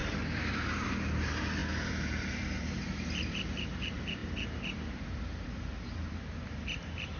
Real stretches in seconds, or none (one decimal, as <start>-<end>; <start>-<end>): none